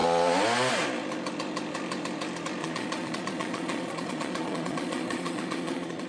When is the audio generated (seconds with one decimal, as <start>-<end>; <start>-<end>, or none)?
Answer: 2.6-6.1